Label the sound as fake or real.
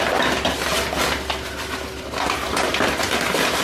real